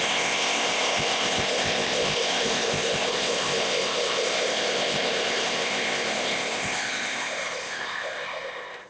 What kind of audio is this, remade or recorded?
remade